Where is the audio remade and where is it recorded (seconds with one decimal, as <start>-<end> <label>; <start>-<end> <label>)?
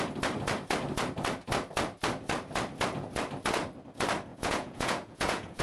0.0-4.3 recorded; 4.3-5.6 remade